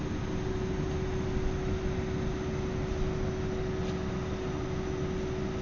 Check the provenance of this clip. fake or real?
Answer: real